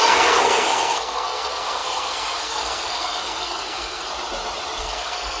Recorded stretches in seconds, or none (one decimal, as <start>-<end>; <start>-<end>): 4.1-4.8